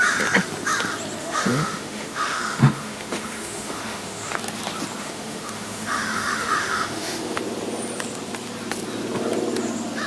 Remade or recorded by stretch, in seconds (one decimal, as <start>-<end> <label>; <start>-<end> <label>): 0.0-1.2 recorded; 1.2-4.4 remade; 4.4-5.0 recorded; 5.0-7.4 remade; 7.4-10.1 recorded